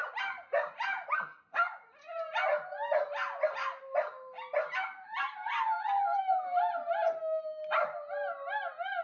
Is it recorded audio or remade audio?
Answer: recorded